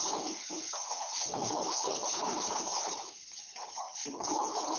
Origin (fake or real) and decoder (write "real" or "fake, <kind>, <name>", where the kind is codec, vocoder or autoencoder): fake, codec, HILCodec